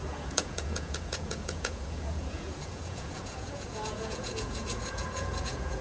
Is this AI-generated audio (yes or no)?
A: yes